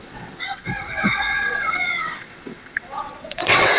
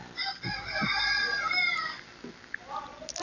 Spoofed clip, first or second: first